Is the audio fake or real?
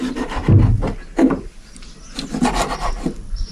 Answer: real